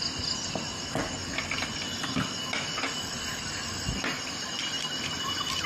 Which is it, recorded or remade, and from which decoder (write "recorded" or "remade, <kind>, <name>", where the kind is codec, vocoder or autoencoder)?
recorded